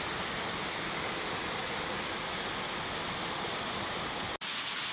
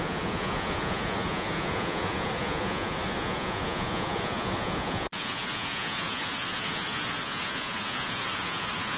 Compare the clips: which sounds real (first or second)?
first